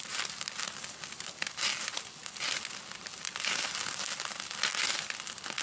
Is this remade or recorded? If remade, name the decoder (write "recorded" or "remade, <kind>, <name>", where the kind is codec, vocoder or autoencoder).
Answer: recorded